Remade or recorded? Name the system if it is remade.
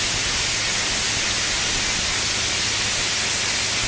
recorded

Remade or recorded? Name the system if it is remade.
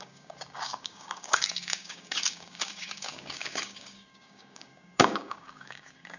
remade, codec, DAC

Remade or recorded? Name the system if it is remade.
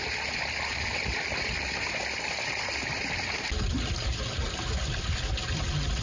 recorded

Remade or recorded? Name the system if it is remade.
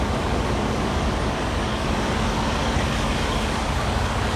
remade, codec, DAC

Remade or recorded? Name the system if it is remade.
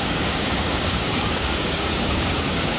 remade, codec, DAC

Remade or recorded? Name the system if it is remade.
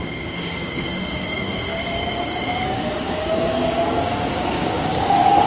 remade, codec, DAC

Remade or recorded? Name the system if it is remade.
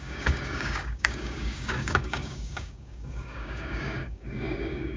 remade, codec, DAC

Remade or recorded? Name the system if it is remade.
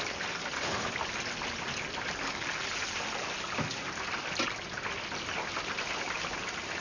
recorded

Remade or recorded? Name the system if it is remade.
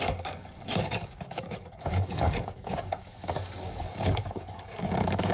remade, codec, DAC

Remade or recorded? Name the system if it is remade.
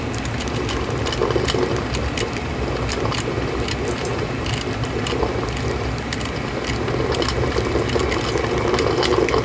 recorded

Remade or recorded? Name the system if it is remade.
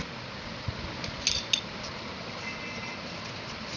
recorded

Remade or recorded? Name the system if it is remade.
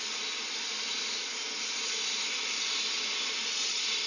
recorded